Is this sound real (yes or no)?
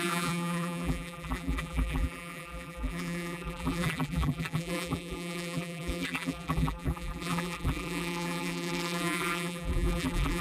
no